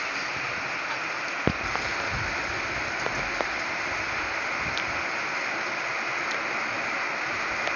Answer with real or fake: real